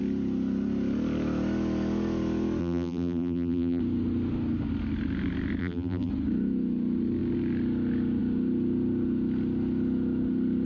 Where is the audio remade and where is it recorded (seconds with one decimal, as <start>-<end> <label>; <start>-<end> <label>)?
0.0-2.6 recorded; 2.6-3.8 remade; 3.8-5.6 recorded; 5.6-6.1 remade; 6.1-10.7 recorded